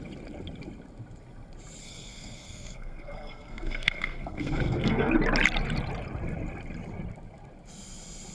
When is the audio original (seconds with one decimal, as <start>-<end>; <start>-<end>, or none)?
0.0-1.8; 5.1-8.3